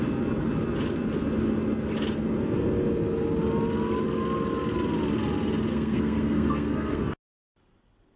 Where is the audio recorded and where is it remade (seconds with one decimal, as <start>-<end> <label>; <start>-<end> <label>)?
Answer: 0.0-5.7 recorded; 5.7-7.0 remade; 7.0-8.2 recorded